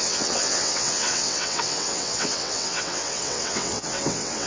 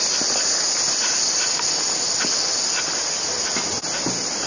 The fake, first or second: first